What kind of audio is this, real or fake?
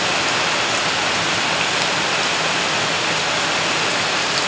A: real